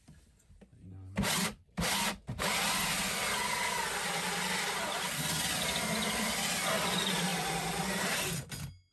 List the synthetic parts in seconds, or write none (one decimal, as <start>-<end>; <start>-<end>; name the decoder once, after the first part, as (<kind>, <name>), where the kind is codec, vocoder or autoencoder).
none